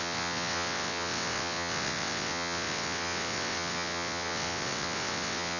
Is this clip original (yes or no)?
no